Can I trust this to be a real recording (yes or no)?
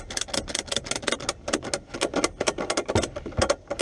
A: yes